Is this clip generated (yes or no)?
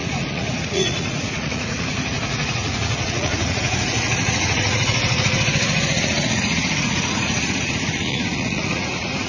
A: yes